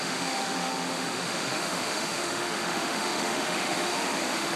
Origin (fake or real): fake